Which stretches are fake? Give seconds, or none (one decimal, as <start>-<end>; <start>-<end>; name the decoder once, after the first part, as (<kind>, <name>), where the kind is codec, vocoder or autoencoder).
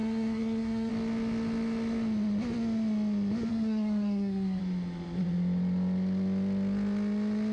0.0-0.9 (codec, SNAC); 3.5-4.6